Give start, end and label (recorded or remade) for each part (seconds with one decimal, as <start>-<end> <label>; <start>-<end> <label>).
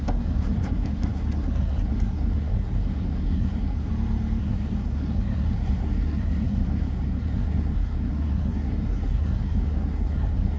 0.0-3.9 remade; 3.9-4.4 recorded; 4.4-10.6 remade